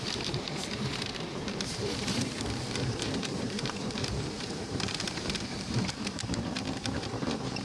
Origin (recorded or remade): remade